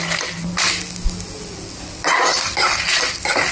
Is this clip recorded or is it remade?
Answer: recorded